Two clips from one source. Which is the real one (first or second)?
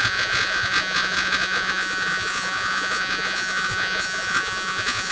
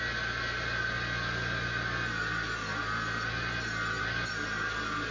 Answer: second